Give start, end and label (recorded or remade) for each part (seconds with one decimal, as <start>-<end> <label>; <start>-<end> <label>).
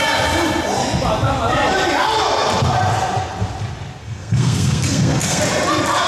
0.0-4.0 recorded; 4.0-5.4 remade; 5.4-6.1 recorded